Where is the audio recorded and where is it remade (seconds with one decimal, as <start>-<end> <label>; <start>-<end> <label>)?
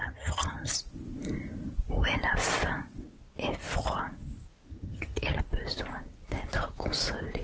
0.0-0.7 remade; 0.7-4.7 recorded; 4.7-5.4 remade; 5.4-7.4 recorded